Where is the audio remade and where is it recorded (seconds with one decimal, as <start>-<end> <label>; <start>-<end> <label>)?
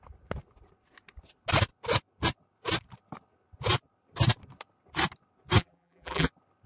0.0-5.6 recorded; 5.6-6.3 remade; 6.3-6.7 recorded